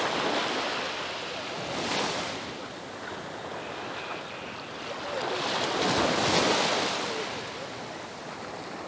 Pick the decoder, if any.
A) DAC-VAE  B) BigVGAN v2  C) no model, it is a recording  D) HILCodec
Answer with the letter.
C